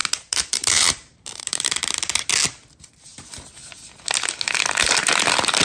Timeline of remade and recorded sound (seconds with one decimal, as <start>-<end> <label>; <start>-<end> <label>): 0.0-2.3 remade; 2.3-5.6 recorded